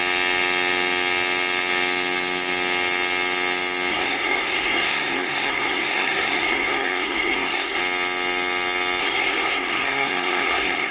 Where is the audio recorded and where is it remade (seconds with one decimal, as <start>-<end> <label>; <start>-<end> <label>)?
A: 0.0-3.9 recorded; 3.9-7.8 remade; 7.8-9.0 recorded; 9.0-10.9 remade